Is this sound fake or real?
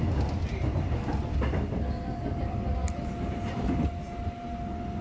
real